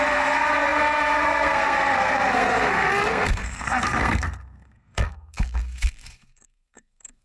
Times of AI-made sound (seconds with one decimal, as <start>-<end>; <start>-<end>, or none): 0.0-7.2